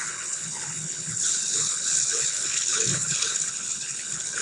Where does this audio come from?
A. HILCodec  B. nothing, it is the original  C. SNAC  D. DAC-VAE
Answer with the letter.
A